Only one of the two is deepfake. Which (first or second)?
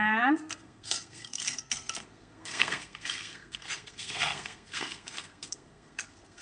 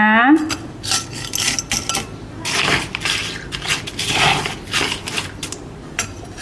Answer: first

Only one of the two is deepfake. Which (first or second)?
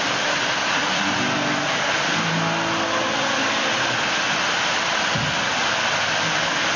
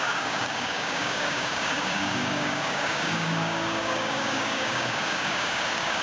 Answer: second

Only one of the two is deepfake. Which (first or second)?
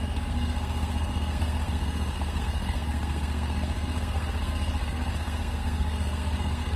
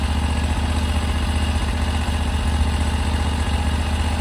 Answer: first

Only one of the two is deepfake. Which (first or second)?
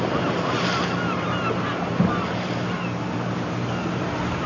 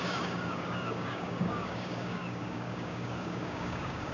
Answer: second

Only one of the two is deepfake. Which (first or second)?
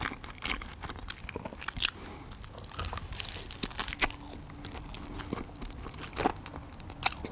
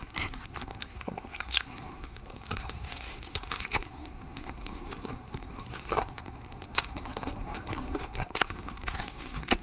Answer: second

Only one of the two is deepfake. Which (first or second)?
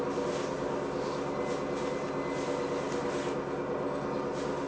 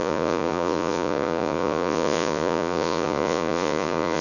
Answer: second